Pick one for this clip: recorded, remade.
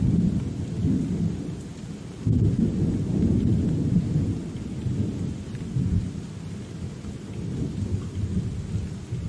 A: recorded